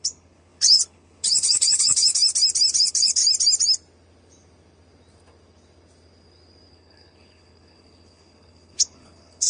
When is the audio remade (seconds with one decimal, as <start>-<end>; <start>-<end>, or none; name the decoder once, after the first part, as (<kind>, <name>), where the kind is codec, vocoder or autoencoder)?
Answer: 0.0-2.2 (codec, HILCodec); 2.8-3.2; 6.7-9.5